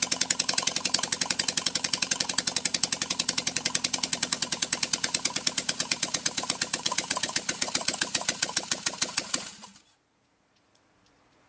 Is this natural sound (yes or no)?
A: no